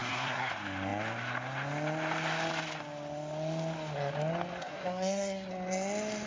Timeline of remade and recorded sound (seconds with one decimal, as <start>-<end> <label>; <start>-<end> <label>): 0.0-0.5 remade; 0.5-4.6 recorded; 4.6-5.5 remade; 5.5-6.3 recorded